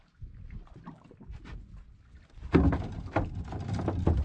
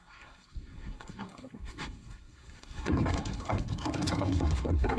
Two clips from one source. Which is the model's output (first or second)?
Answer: second